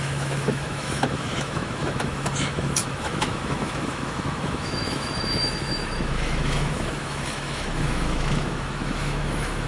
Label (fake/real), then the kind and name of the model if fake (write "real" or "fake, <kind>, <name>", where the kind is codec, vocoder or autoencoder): fake, autoencoder, DAC-VAE